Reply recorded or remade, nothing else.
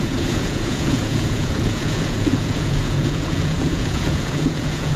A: remade